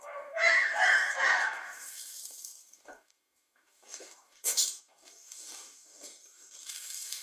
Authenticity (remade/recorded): remade